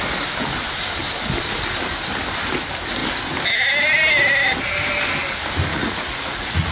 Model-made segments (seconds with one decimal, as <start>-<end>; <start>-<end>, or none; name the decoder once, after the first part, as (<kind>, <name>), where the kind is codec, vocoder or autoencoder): 5.7-6.7 (vocoder, Vocos)